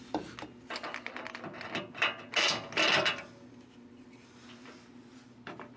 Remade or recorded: recorded